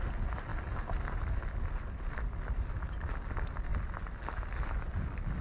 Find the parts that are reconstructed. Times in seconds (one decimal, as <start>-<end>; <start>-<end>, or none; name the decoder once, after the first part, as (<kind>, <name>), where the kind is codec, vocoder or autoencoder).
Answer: none